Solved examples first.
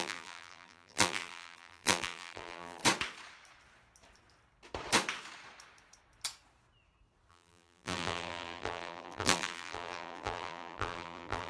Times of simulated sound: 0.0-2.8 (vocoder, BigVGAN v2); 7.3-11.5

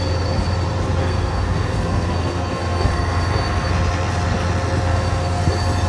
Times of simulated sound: 1.0-3.7 (codec, SNAC); 4.9-5.4

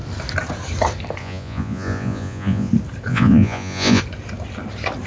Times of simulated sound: 1.2-2.7 (vocoder, Vocos); 3.1-4.0

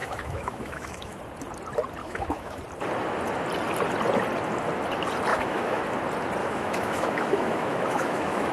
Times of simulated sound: 0.0-1.2 (autoencoder, DAC-VAE); 2.0-2.6; 5.3-5.8; 6.4-8.5

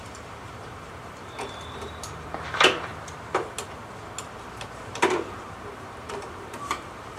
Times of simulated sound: 0.0-2.9 (vocoder, BigVGAN v2); 4.4-7.2

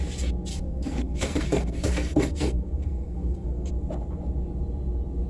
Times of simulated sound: 0.5-3.7 (codec, SNAC)

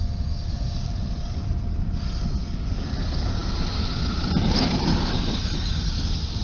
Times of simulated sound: none

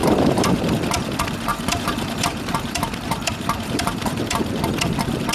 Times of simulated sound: 0.0-0.6 (vocoder, BigVGAN v2); 1.5-4.7